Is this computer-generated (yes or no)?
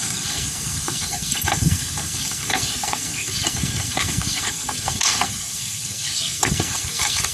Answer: yes